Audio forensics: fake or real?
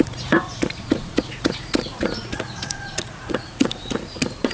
fake